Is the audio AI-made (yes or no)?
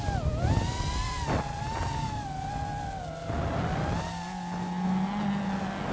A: no